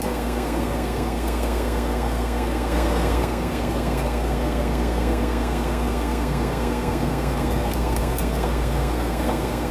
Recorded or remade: remade